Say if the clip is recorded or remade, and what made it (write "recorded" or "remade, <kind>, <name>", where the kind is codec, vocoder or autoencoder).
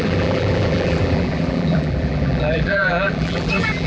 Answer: remade, vocoder, BigVGAN v2